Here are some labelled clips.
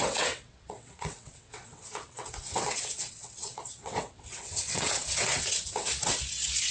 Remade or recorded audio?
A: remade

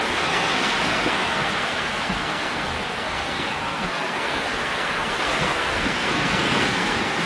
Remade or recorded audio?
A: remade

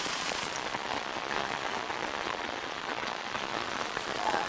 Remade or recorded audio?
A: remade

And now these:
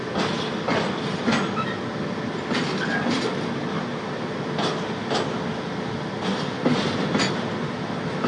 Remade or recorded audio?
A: recorded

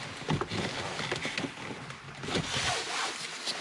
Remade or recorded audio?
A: recorded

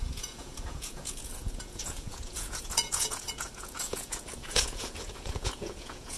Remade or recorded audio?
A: remade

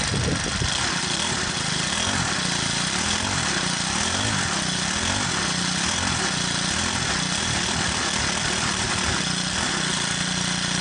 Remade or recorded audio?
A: recorded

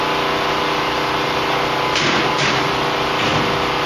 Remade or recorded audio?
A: recorded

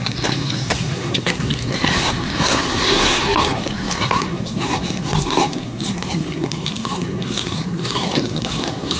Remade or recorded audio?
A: remade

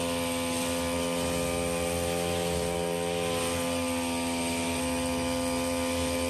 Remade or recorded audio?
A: recorded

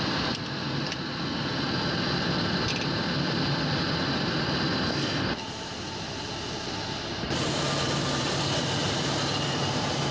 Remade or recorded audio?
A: recorded